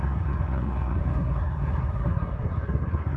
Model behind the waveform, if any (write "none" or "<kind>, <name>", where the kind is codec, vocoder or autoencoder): codec, SNAC